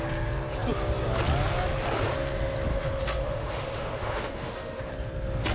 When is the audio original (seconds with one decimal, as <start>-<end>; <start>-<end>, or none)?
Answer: 0.0-2.7; 4.8-5.5